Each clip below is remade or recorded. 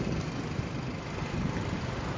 recorded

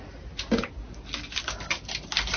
recorded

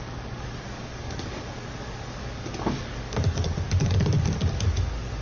remade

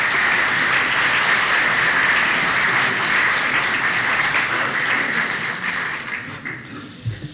recorded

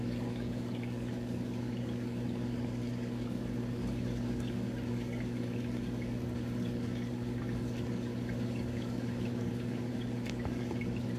remade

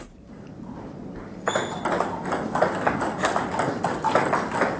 recorded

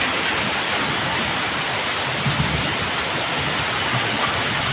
recorded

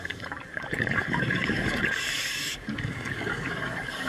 remade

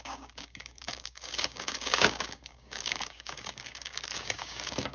remade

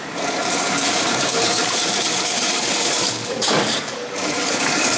remade